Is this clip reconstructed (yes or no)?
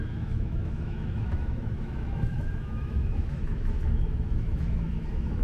yes